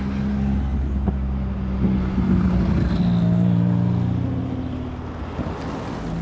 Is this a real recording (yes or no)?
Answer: yes